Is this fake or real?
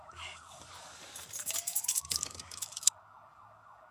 fake